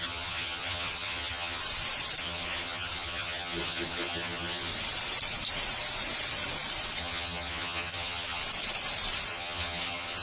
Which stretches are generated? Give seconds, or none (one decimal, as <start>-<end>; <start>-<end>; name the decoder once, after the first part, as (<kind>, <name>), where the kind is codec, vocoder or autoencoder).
0.0-1.6 (vocoder, HiFi-GAN); 2.2-4.7; 7.0-8.4; 9.3-10.2